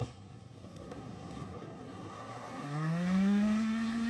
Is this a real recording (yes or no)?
no